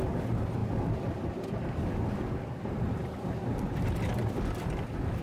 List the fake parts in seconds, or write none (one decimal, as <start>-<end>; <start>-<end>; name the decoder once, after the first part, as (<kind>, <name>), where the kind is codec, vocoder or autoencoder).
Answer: none